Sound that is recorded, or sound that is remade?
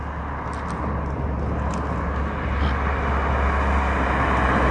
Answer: recorded